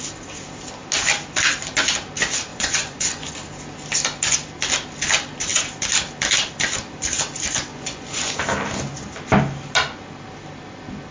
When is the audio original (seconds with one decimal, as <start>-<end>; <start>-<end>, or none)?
0.0-2.5; 3.3-7.7; 8.4-11.1